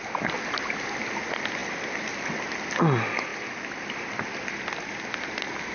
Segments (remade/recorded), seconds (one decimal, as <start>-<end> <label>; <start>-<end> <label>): 0.0-5.7 recorded